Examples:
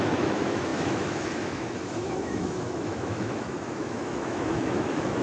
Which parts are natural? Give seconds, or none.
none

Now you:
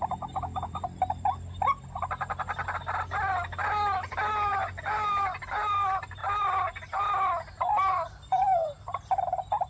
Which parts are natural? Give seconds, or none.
0.0-9.7

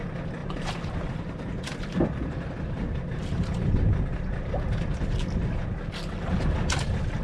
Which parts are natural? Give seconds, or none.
0.0-0.4; 1.6-7.2

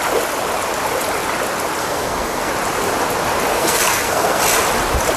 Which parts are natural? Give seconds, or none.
0.0-1.8; 2.5-3.5; 4.4-5.2

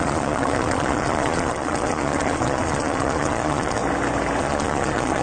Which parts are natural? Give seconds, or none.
3.8-4.4

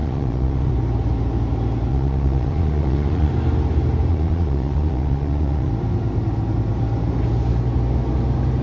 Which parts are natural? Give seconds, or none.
0.7-1.9; 3.3-4.1; 5.7-8.6

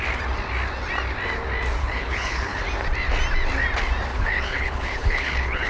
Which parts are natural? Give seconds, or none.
0.0-1.8; 2.6-4.1

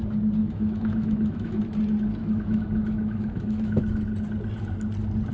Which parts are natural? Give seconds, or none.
0.0-0.4; 1.6-2.2; 3.8-5.3